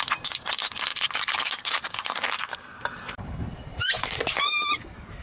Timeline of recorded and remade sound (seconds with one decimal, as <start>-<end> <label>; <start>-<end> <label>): 0.0-0.9 recorded; 0.9-3.2 remade; 3.2-3.7 recorded; 3.7-5.2 remade